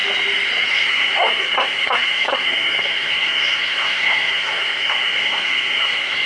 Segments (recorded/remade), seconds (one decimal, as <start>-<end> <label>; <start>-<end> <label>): 0.0-0.7 recorded; 0.7-6.3 remade